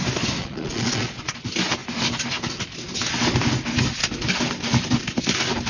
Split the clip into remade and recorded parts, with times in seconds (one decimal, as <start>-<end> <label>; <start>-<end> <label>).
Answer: 0.0-0.4 recorded; 0.4-1.4 remade; 1.4-5.7 recorded